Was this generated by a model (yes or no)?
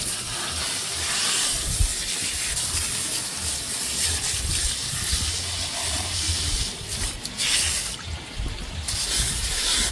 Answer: no